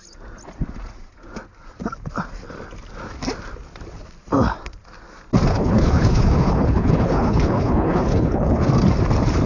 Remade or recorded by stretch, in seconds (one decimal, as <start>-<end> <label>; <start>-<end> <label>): 0.0-5.5 recorded; 5.5-8.7 remade; 8.7-9.5 recorded